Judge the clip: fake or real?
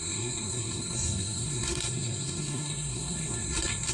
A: fake